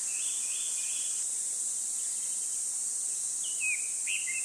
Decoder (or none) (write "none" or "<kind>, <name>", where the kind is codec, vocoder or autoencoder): none